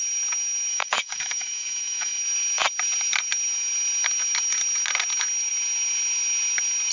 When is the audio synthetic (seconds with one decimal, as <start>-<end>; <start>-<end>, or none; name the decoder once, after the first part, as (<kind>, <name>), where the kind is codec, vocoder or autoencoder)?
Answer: 0.7-2.2 (autoencoder, DAC-VAE)